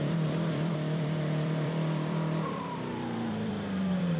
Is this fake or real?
fake